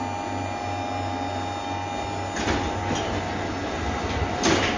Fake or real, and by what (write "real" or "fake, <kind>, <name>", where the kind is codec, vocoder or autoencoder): real